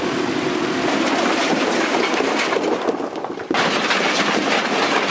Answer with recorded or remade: recorded